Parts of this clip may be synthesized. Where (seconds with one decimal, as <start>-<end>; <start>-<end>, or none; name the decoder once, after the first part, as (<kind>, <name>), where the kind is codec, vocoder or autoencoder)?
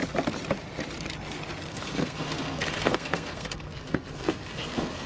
1.7-5.1 (codec, SNAC)